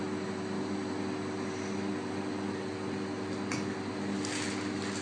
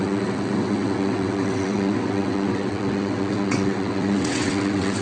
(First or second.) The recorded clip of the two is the first